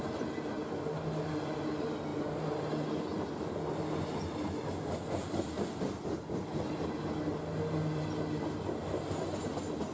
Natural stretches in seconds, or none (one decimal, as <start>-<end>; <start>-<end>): 0.0-9.9